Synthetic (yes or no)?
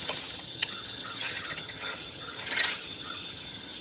yes